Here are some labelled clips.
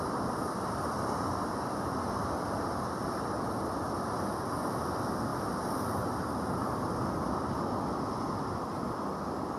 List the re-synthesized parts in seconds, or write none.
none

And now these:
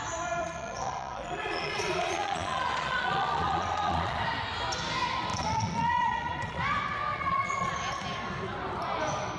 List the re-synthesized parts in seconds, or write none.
0.4-4.2 (vocoder, Vocos); 5.3-6.6; 7.1-7.7

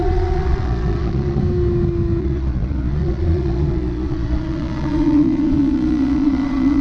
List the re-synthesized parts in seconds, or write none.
0.0-1.4 (vocoder, Vocos); 2.2-6.8

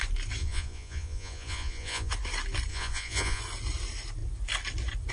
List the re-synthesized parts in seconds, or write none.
0.4-2.1 (vocoder, Vocos); 2.7-3.4

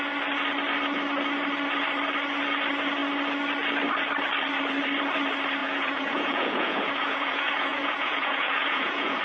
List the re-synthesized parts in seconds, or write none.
5.6-9.2 (vocoder, Vocos)

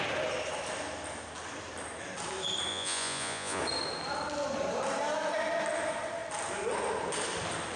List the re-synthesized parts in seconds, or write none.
2.7-3.6 (vocoder, Vocos)

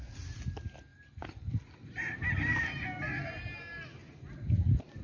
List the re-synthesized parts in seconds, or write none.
none

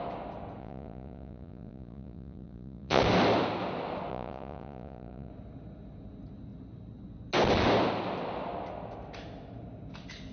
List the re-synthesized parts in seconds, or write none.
0.6-3.0 (vocoder, Vocos); 4.1-5.3